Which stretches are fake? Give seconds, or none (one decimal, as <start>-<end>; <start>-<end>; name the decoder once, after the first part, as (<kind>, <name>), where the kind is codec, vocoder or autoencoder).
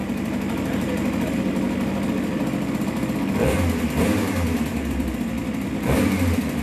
4.0-6.6 (vocoder, BigVGAN v2)